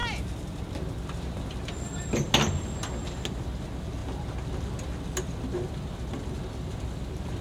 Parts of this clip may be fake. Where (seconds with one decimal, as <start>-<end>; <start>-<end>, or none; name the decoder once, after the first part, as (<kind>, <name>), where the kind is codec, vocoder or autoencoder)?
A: none